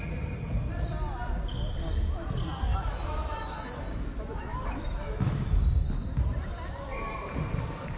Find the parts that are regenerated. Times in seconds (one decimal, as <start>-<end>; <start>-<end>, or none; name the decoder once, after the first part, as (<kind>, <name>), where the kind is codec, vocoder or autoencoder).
2.7-5.5 (autoencoder, DAC-VAE)